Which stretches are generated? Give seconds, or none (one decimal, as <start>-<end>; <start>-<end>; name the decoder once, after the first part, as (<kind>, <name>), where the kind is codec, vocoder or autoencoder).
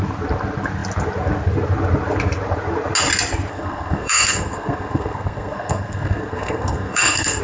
3.5-7.4 (codec, SNAC)